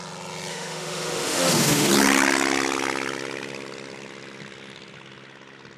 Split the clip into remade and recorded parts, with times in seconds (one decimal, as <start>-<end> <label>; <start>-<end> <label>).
0.0-0.5 recorded; 0.5-1.9 remade; 1.9-5.8 recorded